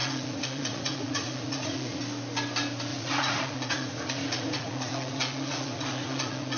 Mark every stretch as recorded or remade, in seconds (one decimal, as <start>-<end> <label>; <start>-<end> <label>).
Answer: 0.0-2.0 remade; 2.0-2.9 recorded; 2.9-6.6 remade